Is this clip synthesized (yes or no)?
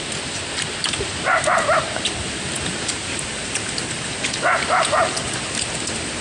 no